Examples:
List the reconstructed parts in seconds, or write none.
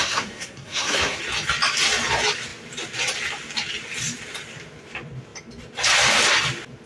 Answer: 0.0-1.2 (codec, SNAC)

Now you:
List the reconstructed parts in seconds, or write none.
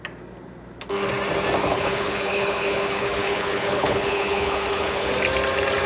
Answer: 1.6-5.1 (codec, HILCodec)